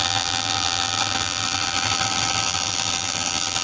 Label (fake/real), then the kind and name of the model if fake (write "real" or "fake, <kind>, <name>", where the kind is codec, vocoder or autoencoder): fake, vocoder, BigVGAN v2